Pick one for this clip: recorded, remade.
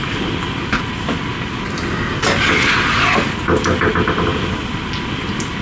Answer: recorded